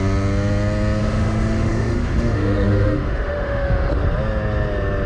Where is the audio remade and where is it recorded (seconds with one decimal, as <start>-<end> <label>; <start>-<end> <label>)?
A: 0.0-1.0 recorded; 1.0-3.9 remade; 3.9-5.1 recorded